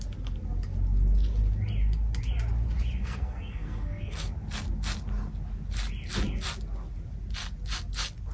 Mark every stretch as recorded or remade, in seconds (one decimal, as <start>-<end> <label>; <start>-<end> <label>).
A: 0.0-3.0 recorded; 3.0-4.3 remade; 4.3-8.3 recorded